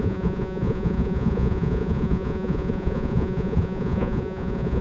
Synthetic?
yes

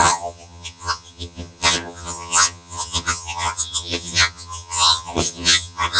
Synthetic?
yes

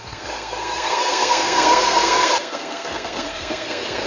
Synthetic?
yes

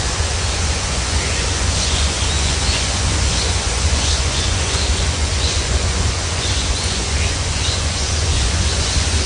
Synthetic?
yes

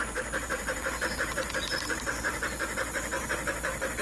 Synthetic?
yes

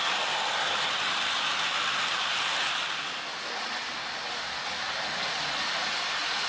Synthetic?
no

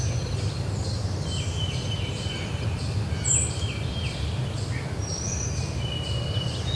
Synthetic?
no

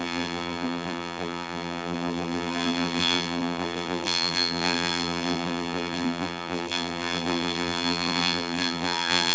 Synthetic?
yes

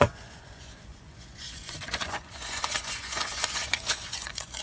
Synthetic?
yes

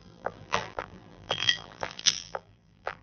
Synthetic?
yes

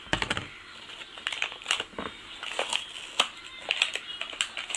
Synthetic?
no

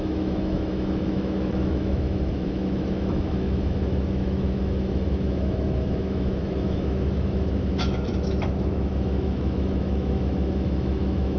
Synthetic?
yes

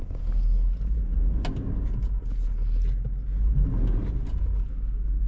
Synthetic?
no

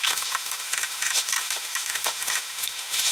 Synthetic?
yes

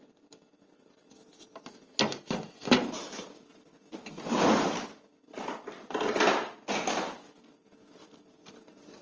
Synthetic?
no